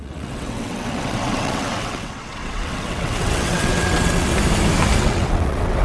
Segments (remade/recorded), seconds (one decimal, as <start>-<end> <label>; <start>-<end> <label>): 0.0-4.3 remade; 4.3-5.0 recorded; 5.0-5.8 remade